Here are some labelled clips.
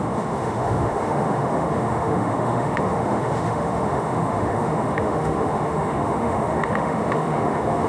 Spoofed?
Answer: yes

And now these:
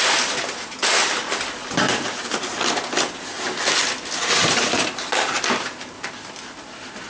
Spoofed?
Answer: no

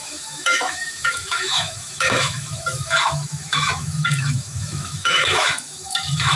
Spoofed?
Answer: yes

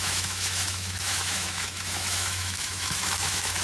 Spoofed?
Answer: yes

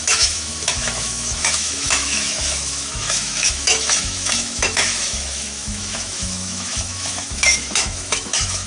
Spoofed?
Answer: yes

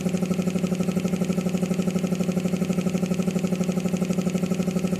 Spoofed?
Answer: no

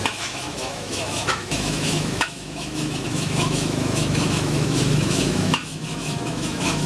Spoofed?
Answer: yes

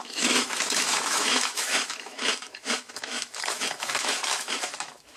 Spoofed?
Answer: yes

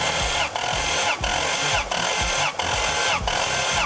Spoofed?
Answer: no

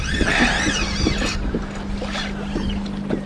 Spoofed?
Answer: no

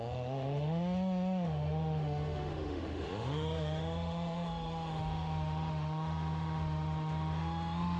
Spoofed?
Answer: yes